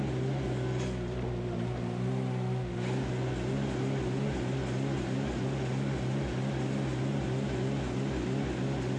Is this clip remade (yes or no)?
no